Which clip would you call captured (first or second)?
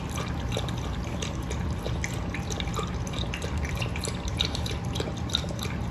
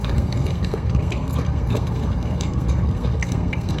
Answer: first